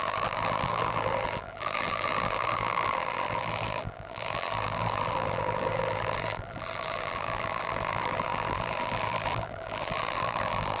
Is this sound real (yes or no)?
no